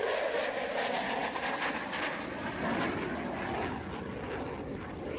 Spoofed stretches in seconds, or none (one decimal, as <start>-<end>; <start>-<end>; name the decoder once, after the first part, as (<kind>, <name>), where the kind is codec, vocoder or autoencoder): none